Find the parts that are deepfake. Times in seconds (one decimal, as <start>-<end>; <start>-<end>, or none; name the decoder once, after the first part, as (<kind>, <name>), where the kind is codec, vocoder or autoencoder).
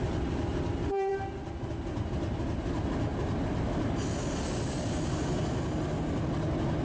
none